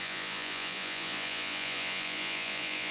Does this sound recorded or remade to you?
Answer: remade